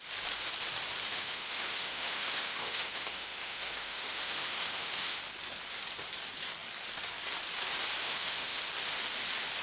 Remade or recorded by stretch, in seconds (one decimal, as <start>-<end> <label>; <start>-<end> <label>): 0.0-1.1 recorded; 1.1-5.2 remade; 5.2-8.0 recorded; 8.0-8.6 remade; 8.6-9.6 recorded